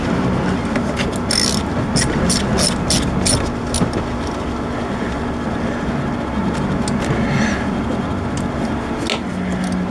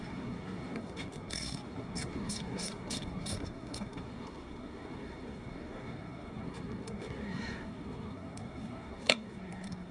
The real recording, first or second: first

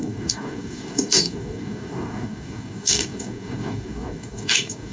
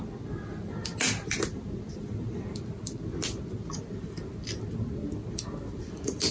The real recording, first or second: second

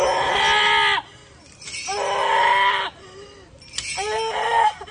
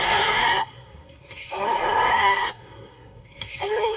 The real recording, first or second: first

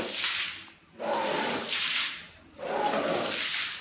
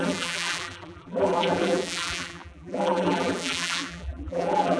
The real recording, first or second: first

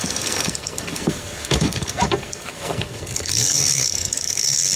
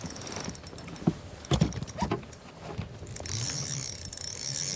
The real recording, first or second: second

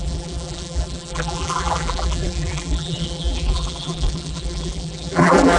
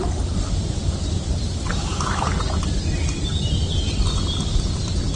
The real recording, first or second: second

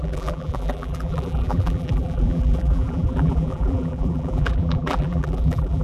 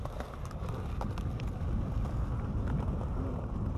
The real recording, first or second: second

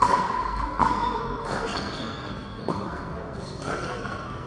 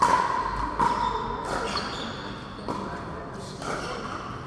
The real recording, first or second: second